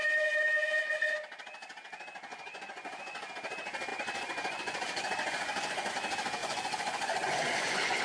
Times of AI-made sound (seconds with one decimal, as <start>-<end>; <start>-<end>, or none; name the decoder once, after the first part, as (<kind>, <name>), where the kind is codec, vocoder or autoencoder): 2.3-3.3 (vocoder, Vocos); 3.9-5.9; 6.4-8.0

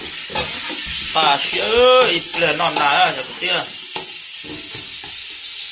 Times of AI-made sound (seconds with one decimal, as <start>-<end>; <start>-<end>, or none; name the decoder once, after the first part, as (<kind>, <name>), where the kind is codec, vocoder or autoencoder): none